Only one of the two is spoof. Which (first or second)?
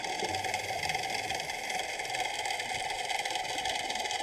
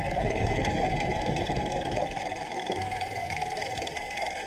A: second